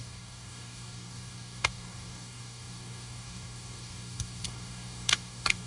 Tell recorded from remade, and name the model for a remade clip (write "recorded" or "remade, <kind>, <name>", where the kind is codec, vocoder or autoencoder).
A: remade, codec, DAC